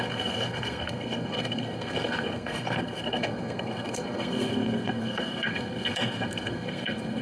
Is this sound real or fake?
fake